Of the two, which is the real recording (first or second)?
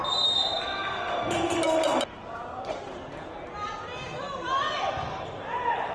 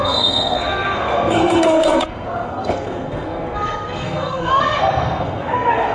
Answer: first